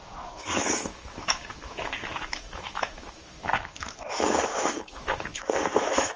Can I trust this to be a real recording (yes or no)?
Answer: no